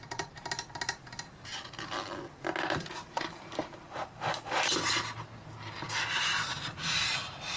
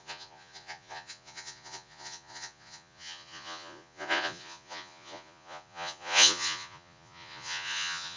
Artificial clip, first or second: second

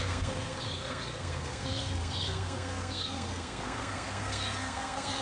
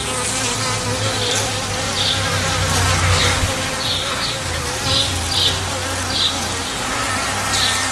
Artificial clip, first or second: first